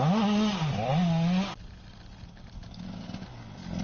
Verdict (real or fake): real